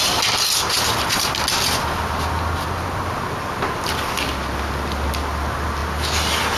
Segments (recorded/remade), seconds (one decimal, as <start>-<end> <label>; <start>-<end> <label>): 0.0-6.6 recorded